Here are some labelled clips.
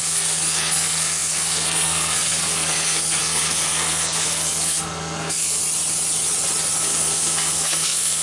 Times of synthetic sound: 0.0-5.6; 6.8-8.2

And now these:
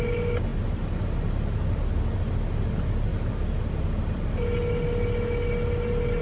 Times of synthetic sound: none

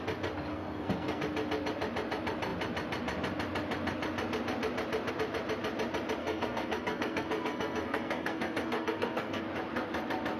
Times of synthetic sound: 0.5-1.2; 6.2-9.4

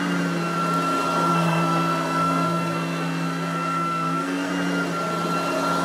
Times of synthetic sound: 1.3-4.5

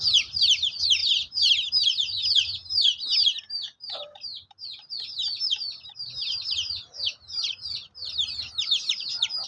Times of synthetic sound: none

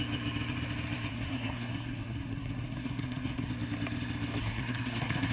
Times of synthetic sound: 1.1-3.5; 4.4-5.3